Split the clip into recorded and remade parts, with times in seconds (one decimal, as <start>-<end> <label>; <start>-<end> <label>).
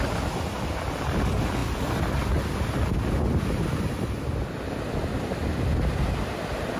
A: 0.0-6.8 recorded